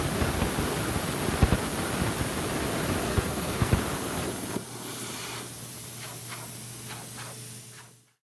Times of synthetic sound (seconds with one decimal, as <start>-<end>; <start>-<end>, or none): 3.1-3.7